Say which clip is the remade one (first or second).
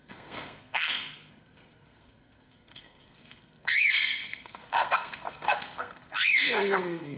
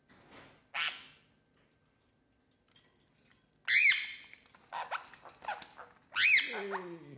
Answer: first